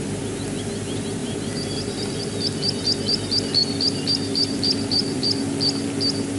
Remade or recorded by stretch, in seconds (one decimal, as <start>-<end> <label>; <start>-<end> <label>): 0.0-1.2 recorded; 1.2-2.2 remade; 2.2-3.6 recorded; 3.6-5.4 remade; 5.4-6.4 recorded